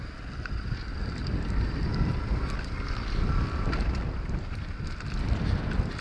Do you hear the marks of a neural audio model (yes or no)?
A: no